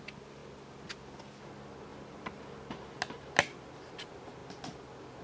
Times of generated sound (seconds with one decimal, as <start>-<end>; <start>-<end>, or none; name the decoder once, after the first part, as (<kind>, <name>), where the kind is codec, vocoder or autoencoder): none